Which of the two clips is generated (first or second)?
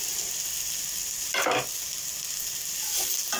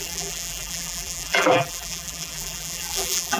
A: second